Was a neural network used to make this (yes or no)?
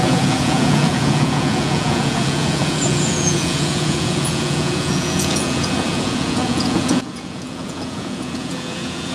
yes